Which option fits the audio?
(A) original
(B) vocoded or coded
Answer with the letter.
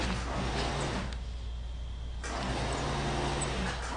A